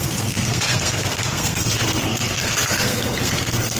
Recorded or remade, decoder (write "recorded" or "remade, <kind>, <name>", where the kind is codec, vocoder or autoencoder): remade, codec, SNAC